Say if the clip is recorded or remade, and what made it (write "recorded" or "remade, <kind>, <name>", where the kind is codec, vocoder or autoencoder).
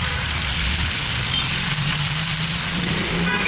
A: recorded